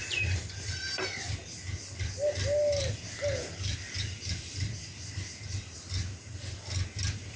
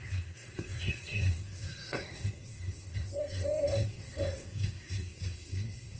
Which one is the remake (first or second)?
second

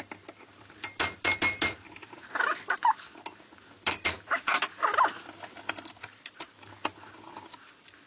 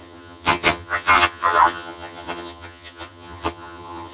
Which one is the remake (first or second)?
second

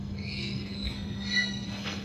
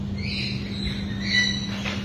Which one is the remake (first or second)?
first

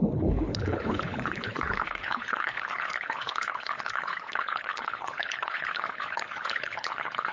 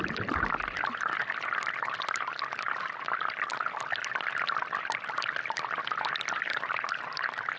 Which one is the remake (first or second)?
first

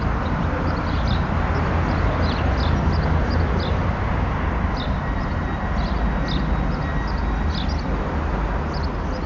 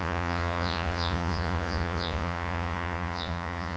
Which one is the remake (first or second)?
second